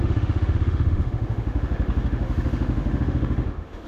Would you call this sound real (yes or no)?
no